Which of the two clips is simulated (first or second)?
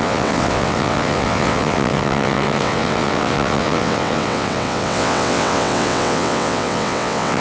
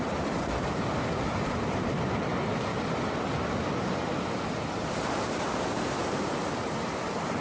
first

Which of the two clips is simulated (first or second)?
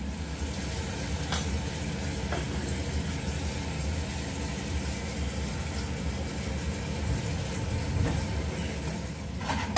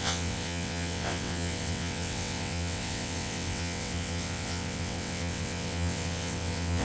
second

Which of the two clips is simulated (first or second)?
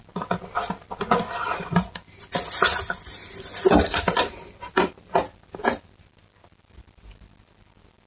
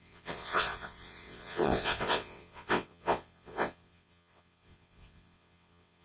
second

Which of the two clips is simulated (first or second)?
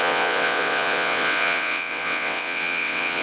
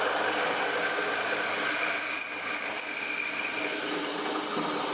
first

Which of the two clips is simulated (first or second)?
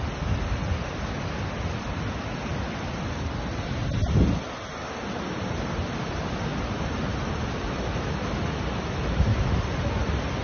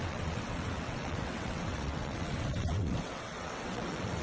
second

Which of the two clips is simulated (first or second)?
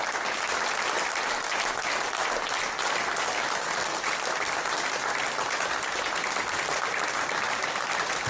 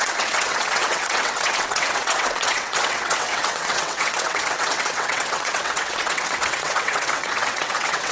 second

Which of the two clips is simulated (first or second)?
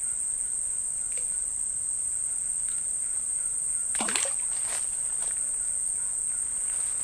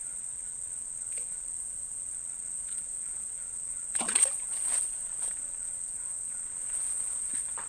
second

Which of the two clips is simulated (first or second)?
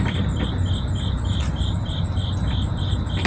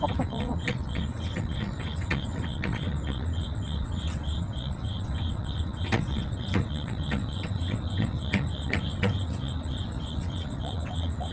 second